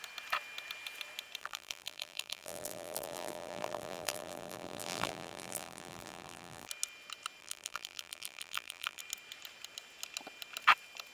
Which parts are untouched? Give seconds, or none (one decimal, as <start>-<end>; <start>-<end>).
0.0-1.4; 6.7-7.4; 9.0-11.1